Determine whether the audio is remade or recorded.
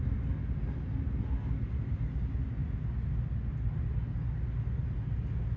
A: recorded